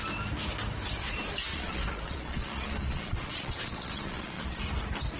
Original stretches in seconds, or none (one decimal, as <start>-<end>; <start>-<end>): 0.0-1.5; 4.6-5.2